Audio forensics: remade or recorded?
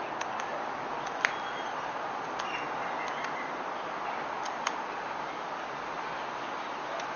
recorded